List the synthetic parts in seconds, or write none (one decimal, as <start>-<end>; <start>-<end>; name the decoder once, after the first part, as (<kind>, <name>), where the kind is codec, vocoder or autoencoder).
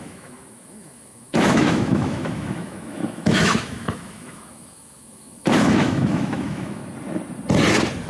0.0-6.8 (autoencoder, DAC-VAE)